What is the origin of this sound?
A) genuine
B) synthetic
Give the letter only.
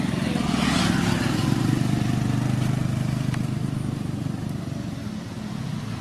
A